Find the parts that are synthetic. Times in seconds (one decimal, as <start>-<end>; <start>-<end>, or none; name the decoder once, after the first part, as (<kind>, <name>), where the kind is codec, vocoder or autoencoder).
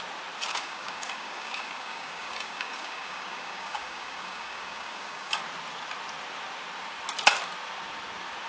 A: 0.5-5.4 (codec, DAC)